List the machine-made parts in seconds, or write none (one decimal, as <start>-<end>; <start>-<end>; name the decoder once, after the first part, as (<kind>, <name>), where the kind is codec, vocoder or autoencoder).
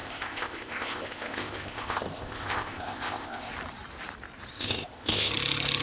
0.0-3.5 (codec, ZipCodec); 4.5-5.3